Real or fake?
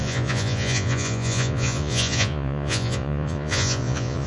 fake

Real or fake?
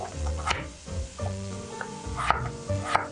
fake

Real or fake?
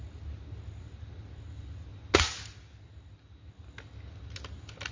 real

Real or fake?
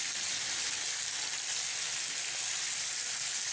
real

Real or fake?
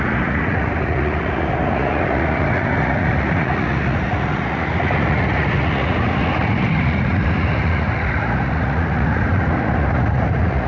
fake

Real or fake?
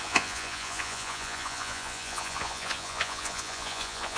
fake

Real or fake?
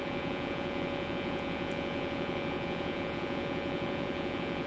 fake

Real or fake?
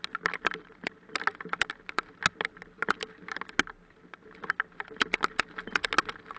real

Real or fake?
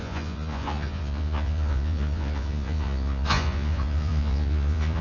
fake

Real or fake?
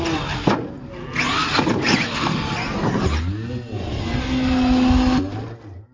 real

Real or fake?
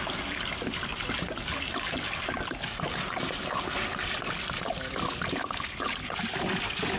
real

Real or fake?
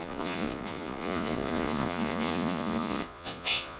fake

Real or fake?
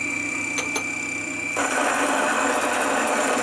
real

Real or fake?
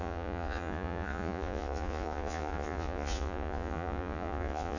fake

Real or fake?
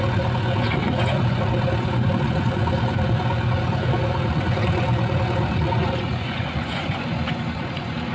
fake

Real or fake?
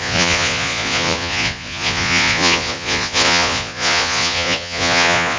fake